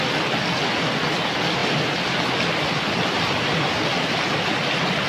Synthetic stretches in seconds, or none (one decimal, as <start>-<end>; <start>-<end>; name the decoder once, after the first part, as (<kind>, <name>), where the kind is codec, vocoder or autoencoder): 1.6-3.4 (vocoder, BigVGAN v2)